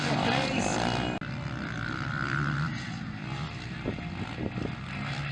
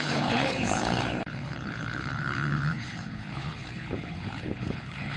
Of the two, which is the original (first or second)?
first